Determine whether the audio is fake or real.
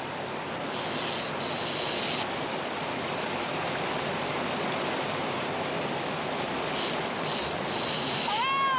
real